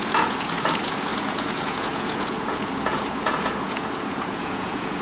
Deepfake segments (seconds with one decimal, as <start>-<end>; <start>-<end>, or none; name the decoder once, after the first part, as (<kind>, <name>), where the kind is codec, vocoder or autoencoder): 0.0-5.0 (vocoder, Vocos)